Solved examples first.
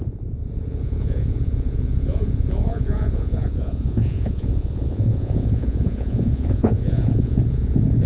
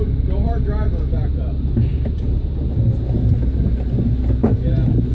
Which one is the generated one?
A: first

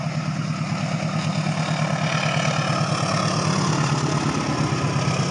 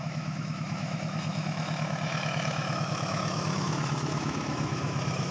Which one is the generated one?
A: second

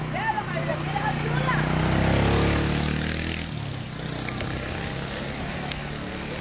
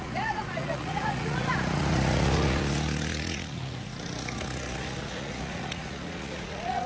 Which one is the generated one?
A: second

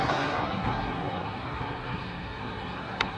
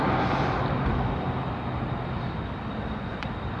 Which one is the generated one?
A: first